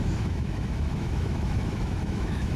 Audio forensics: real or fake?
fake